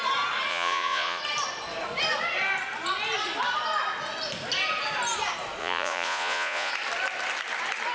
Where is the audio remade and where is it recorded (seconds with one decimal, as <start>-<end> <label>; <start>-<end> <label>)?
0.0-0.5 recorded; 0.5-1.2 remade; 1.2-5.6 recorded; 5.6-6.7 remade; 6.7-7.9 recorded